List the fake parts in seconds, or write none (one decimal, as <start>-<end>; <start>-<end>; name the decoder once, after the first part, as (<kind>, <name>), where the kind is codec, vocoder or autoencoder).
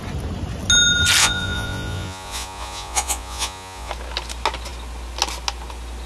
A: 1.2-3.9 (vocoder, Vocos)